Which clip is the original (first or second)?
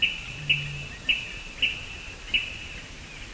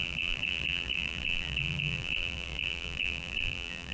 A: first